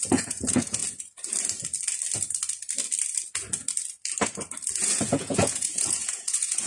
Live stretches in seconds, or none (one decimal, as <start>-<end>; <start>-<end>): 0.8-4.8